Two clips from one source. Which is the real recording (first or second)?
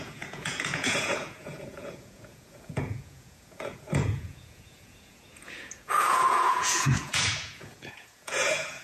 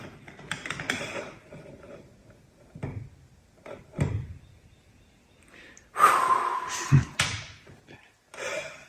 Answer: second